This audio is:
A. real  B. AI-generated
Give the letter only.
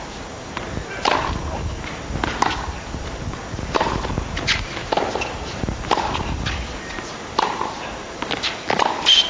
A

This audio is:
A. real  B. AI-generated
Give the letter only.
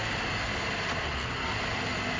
A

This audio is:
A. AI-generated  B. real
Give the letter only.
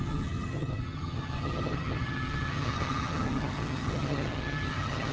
A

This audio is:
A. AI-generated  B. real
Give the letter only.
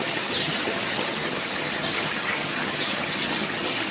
A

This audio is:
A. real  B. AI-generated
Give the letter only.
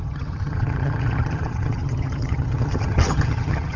B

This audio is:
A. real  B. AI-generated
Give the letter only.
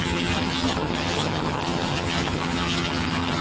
B